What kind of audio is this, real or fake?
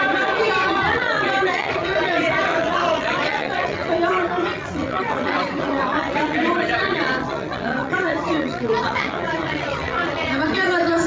fake